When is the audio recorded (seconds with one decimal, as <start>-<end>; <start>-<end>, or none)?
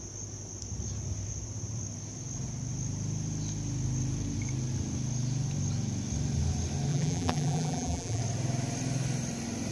0.0-6.9; 8.2-9.7